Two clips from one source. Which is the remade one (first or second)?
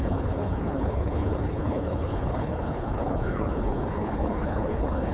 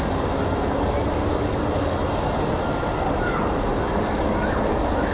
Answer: first